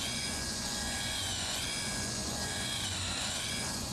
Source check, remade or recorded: remade